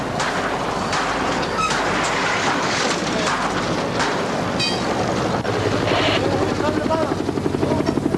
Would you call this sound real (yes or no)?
yes